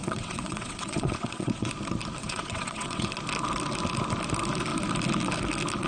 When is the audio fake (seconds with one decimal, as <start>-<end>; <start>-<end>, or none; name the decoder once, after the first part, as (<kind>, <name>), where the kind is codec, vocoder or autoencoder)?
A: 0.0-1.7 (vocoder, WaveNeXt); 2.2-3.1